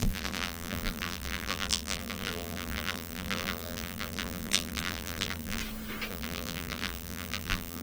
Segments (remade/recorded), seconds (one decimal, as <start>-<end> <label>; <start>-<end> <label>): 0.0-5.6 remade; 5.6-6.1 recorded; 6.1-7.8 remade